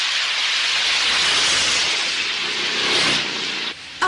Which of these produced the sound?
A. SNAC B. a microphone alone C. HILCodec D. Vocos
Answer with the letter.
B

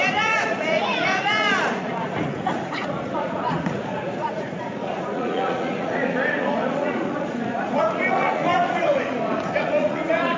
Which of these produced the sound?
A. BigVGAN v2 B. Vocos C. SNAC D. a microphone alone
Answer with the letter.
B